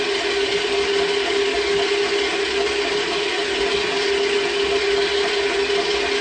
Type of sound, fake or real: real